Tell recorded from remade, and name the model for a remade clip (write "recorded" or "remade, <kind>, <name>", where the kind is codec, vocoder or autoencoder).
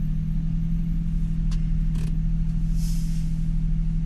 recorded